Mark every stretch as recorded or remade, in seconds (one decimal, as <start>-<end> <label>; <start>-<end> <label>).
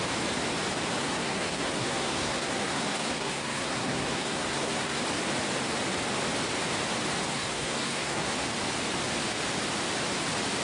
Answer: 0.0-1.0 recorded; 1.0-5.0 remade; 5.0-7.3 recorded; 7.3-8.3 remade; 8.3-10.6 recorded